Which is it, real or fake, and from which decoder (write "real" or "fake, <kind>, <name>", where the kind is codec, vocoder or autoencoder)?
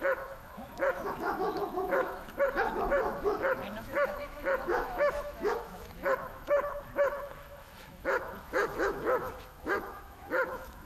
fake, autoencoder, DAC-VAE